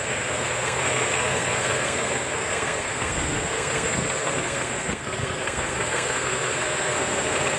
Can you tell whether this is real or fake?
fake